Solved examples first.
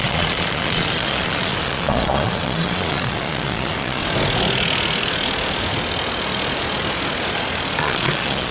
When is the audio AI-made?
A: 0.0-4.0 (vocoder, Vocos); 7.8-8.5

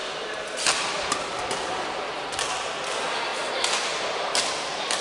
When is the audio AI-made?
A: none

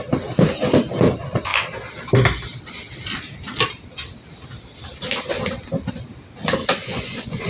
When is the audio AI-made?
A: 6.8-7.5 (vocoder, Vocos)